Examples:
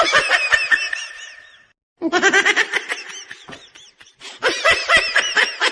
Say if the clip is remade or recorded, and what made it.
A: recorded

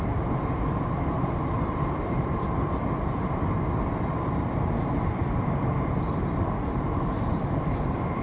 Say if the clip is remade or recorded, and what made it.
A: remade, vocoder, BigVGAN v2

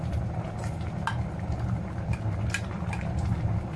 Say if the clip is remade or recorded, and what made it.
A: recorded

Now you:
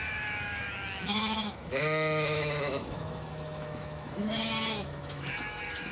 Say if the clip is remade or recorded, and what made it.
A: remade, autoencoder, DAC-VAE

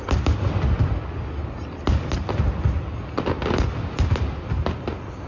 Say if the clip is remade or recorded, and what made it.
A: recorded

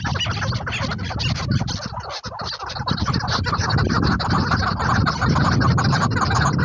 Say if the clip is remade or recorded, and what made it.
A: recorded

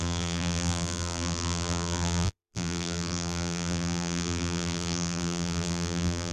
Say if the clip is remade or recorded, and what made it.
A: remade, vocoder, BigVGAN v2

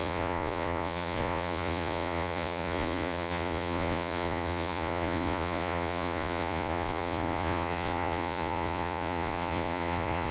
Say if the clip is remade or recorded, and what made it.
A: remade, vocoder, Vocos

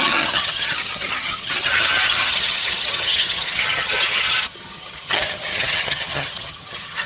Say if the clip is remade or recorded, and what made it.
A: remade, vocoder, HiFi-GAN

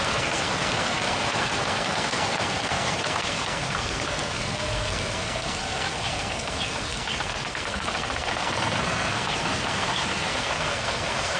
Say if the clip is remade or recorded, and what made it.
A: remade, codec, SNAC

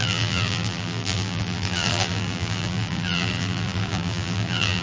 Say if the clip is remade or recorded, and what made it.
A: remade, vocoder, BigVGAN v2